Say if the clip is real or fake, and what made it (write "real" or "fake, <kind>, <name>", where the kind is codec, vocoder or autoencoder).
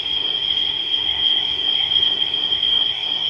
fake, codec, SNAC